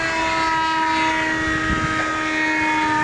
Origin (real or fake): real